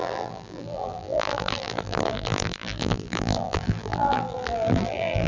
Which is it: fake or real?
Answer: fake